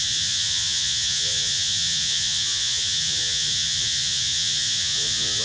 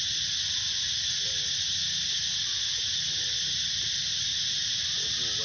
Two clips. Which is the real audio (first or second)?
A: second